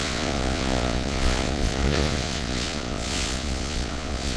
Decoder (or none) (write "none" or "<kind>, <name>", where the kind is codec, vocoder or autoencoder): vocoder, Vocos